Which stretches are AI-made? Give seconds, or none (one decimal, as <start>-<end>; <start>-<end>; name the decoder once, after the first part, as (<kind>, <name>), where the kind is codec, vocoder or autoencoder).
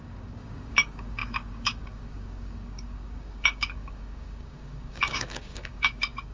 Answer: 0.0-6.3 (codec, DAC)